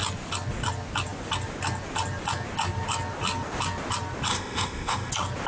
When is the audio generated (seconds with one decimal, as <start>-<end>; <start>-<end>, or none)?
4.3-5.1